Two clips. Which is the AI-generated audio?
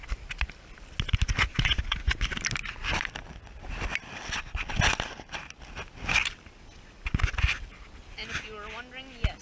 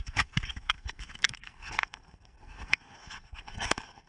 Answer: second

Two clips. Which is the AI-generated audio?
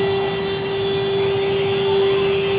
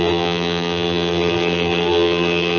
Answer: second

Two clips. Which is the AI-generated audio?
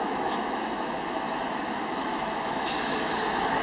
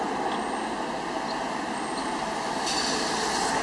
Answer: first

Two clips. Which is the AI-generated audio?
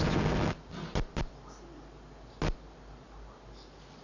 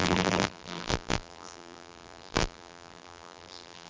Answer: second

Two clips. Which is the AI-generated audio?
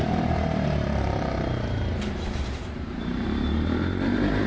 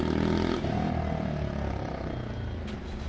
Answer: first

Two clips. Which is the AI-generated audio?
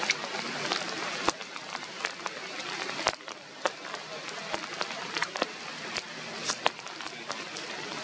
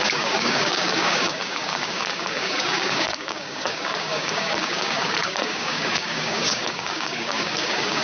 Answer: second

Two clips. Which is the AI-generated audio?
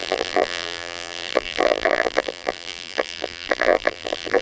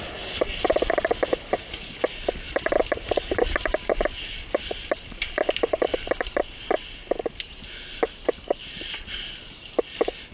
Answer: first